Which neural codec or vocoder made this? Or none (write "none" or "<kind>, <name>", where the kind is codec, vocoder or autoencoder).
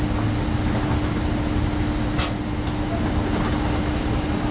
none